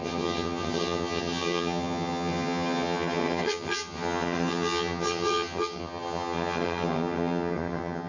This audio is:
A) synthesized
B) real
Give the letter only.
A